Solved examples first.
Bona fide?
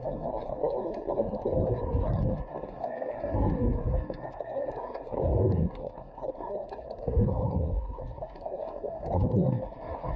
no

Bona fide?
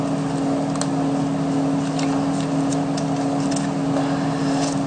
yes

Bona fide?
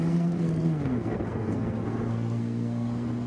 no